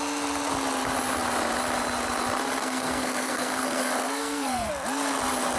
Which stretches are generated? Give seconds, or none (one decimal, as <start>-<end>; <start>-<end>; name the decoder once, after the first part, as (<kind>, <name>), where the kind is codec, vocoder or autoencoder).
2.6-4.7 (codec, SNAC)